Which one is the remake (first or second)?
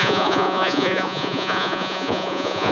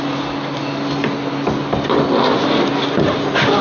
first